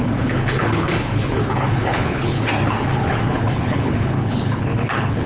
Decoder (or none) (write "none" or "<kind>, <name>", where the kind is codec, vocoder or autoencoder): codec, HILCodec